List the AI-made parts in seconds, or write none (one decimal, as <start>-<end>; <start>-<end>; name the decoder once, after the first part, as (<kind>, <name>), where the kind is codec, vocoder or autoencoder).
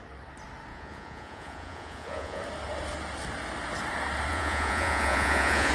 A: 0.7-2.4 (vocoder, Vocos); 4.3-5.7